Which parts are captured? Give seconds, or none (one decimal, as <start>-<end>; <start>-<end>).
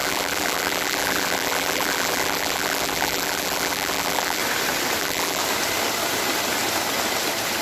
4.4-5.0; 5.4-7.6